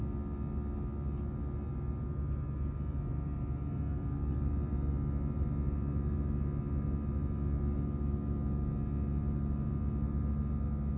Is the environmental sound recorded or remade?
recorded